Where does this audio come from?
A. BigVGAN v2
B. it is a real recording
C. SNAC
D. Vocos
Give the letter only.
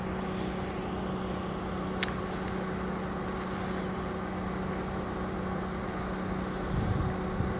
B